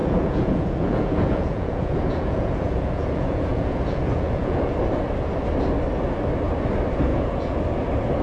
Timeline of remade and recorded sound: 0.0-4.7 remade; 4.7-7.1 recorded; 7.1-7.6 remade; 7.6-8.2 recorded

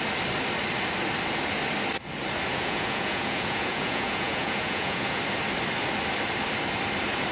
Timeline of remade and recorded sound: 0.0-2.5 recorded; 2.5-5.2 remade; 5.2-7.3 recorded

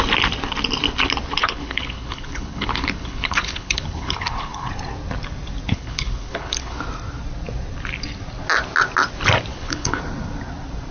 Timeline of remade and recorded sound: 0.0-1.4 recorded; 1.4-4.7 remade; 4.7-5.7 recorded; 5.7-6.8 remade; 6.8-9.5 recorded; 9.5-10.0 remade; 10.0-10.9 recorded

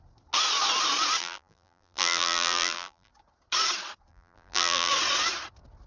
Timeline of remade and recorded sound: 0.0-1.2 recorded; 1.2-3.1 remade; 3.1-4.1 recorded; 4.1-4.9 remade; 4.9-5.9 recorded

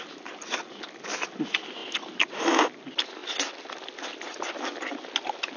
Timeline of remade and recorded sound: 0.0-5.6 recorded

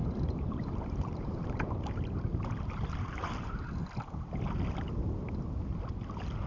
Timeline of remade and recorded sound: 0.0-3.8 remade; 3.8-6.5 recorded